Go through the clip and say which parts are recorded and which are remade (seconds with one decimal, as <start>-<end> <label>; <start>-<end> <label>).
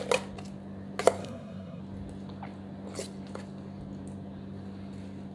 0.0-1.2 recorded; 1.2-1.8 remade; 1.8-5.3 recorded